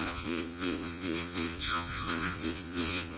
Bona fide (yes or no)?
no